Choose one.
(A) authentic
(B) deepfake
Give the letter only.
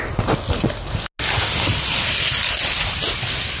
A